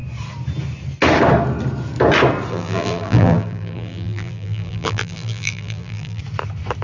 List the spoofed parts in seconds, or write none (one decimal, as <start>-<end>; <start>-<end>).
2.5-6.2